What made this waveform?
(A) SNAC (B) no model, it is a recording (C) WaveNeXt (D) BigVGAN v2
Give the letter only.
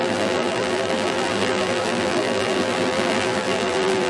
D